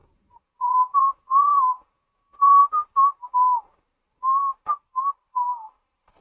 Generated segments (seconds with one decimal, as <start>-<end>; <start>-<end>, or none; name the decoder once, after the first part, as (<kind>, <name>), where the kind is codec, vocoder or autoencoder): 0.0-2.6 (vocoder, Vocos)